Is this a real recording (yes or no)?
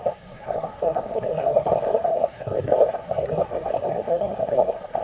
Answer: no